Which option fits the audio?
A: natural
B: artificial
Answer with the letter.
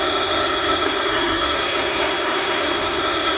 B